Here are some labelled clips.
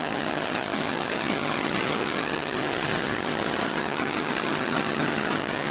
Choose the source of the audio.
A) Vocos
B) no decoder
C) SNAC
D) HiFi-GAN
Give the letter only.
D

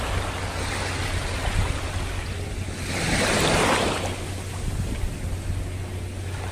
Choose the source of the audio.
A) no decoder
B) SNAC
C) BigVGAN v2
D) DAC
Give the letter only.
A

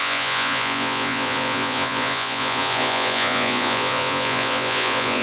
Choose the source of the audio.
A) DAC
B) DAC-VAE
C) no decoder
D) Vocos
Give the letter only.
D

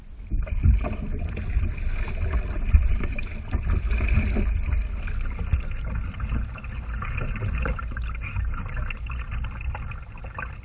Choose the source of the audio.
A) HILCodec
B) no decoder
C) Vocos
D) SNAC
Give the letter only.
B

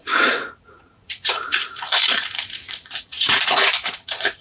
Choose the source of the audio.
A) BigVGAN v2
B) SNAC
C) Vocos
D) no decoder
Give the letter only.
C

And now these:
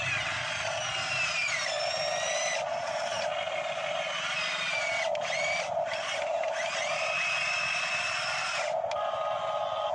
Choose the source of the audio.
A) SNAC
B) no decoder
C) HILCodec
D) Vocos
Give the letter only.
B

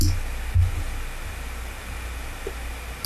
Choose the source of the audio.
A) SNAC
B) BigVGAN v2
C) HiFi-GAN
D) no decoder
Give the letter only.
D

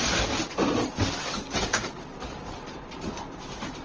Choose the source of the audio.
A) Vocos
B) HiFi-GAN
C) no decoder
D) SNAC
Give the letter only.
C